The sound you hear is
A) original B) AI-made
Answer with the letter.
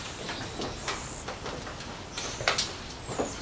A